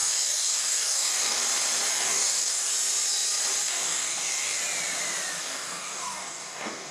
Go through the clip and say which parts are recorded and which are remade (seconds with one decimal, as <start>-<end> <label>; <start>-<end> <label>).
0.0-1.4 remade; 1.4-1.9 recorded; 1.9-2.7 remade; 2.7-3.6 recorded; 3.6-4.6 remade; 4.6-5.4 recorded; 5.4-6.9 remade